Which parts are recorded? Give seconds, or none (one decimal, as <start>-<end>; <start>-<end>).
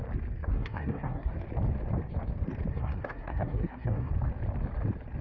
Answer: 0.0-0.4; 1.3-2.7; 4.1-5.2